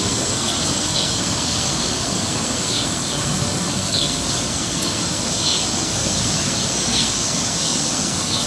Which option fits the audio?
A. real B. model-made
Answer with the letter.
B